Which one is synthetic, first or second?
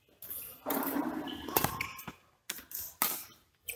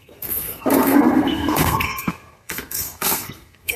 second